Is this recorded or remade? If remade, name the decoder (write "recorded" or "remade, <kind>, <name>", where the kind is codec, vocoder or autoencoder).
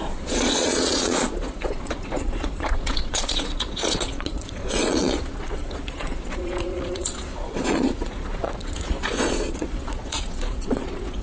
remade, vocoder, Vocos